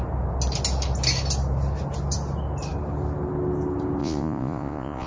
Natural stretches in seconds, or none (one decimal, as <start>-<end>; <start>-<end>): 0.0-4.0